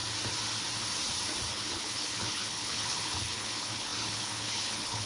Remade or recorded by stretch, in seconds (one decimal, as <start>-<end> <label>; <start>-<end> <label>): 0.0-1.5 recorded; 1.5-5.1 remade